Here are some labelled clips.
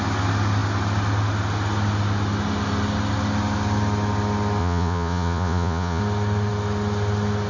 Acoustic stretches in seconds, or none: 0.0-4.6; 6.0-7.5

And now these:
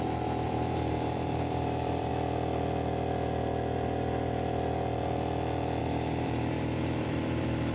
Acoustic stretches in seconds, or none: 2.1-5.8

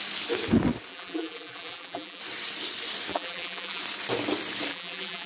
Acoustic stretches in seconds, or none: 0.0-0.9; 2.2-3.1; 3.8-4.7

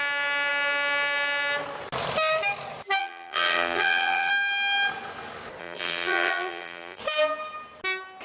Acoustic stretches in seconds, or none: 0.0-3.0; 4.3-5.6; 7.0-8.2

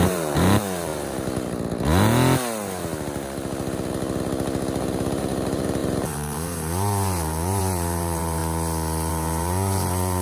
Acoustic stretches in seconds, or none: 0.9-4.8; 8.4-9.1

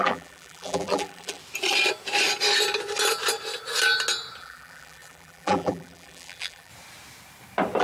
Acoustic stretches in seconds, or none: 1.4-4.4; 6.7-7.8